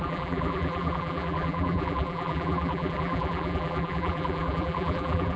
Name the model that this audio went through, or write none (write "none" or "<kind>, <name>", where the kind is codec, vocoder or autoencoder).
vocoder, BigVGAN v2